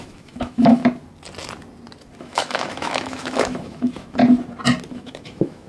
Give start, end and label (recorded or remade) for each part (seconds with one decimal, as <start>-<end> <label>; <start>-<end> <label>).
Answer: 0.0-0.8 remade; 0.8-2.2 recorded; 2.2-4.2 remade; 4.2-4.9 recorded; 4.9-5.7 remade